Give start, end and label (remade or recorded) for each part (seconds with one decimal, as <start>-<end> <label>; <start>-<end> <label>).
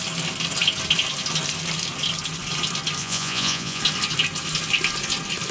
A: 0.0-3.0 recorded; 3.0-3.8 remade; 3.8-5.5 recorded